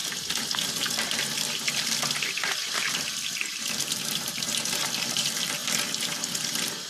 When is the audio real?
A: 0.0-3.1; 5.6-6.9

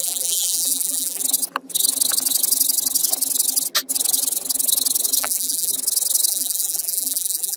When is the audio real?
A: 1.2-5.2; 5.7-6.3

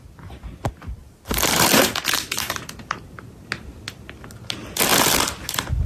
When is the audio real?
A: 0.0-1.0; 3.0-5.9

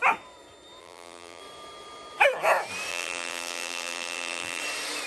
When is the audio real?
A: 0.0-0.8; 1.4-2.9; 4.6-5.1

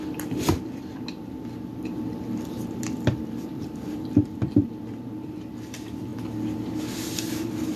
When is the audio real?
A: 6.1-7.3